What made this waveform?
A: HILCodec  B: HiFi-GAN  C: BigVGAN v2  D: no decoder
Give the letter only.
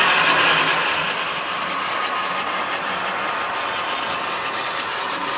C